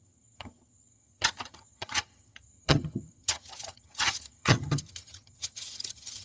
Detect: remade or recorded remade